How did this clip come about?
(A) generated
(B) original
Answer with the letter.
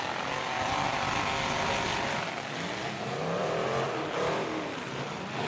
B